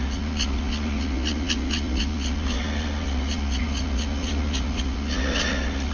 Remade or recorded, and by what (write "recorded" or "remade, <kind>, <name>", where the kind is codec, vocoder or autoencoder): remade, vocoder, Vocos